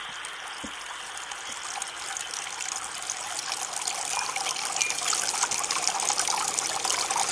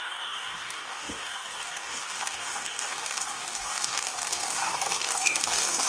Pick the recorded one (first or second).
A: first